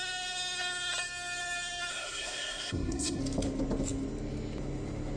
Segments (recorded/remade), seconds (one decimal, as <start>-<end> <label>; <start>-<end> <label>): 0.0-1.9 recorded; 1.9-3.2 remade; 3.2-5.2 recorded